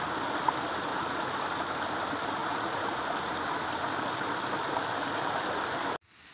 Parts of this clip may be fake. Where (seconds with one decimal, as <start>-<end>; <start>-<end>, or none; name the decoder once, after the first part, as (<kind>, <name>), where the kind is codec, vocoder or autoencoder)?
0.9-1.4 (vocoder, Vocos); 2.4-3.0